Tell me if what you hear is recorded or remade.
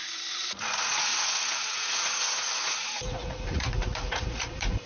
remade